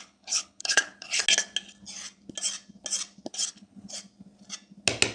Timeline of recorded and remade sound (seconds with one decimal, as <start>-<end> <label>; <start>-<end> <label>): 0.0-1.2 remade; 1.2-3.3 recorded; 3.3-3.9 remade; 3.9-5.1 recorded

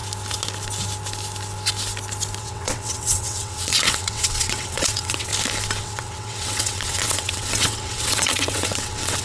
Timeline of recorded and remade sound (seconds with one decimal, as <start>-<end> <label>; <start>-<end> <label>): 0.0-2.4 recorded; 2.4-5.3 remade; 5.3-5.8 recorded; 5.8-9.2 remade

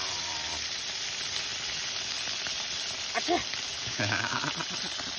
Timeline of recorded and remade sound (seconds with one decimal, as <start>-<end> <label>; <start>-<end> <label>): 0.0-3.8 recorded; 3.8-4.4 remade; 4.4-5.2 recorded

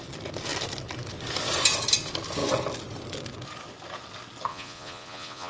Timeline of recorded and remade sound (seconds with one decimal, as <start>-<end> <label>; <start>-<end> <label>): 0.0-4.5 recorded; 4.5-5.5 remade

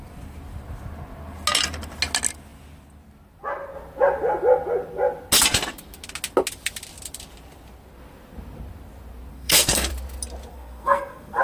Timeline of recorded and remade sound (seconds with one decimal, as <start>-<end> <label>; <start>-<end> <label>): 0.0-9.3 recorded; 9.3-9.9 remade; 9.9-10.5 recorded; 10.5-11.4 remade

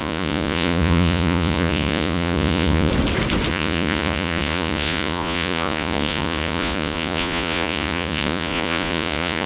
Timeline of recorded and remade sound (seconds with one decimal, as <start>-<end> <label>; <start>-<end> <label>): 0.0-2.9 remade; 2.9-3.5 recorded; 3.5-9.5 remade